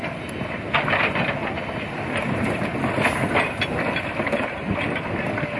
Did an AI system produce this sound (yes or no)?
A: no